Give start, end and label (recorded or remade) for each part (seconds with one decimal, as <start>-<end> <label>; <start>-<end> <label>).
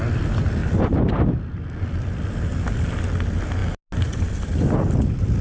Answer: 0.0-5.4 recorded